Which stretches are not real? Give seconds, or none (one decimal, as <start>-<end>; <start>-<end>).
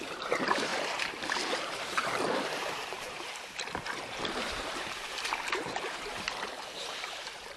0.0-7.6